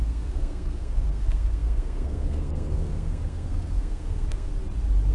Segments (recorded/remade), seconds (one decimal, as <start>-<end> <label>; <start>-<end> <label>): 0.0-4.5 remade; 4.5-5.1 recorded